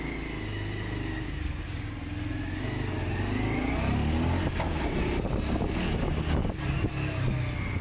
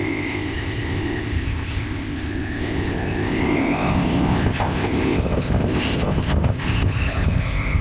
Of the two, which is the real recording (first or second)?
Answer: first